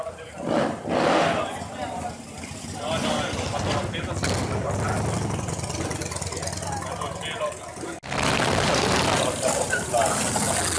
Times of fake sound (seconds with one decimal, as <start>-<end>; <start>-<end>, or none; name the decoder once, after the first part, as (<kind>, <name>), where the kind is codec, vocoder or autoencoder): none